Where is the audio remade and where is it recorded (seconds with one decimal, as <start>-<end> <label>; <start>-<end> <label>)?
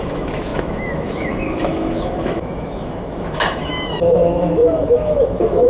0.0-5.7 remade